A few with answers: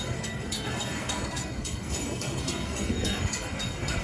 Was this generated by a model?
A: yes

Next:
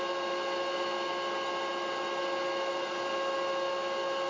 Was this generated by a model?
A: no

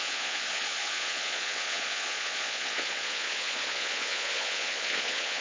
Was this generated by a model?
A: yes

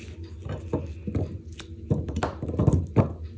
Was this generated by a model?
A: no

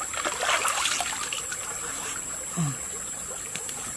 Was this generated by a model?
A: no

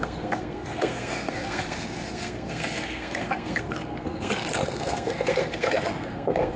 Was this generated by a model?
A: yes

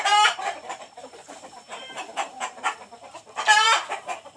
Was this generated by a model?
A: yes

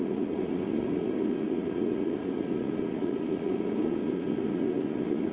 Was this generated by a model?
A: yes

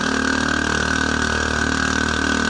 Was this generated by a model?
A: no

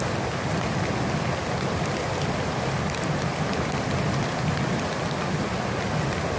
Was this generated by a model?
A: no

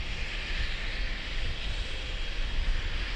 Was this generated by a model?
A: no